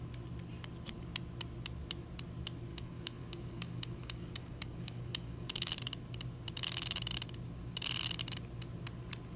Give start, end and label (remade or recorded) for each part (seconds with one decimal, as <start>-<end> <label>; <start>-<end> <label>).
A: 0.0-2.7 recorded; 2.7-5.7 remade; 5.7-9.4 recorded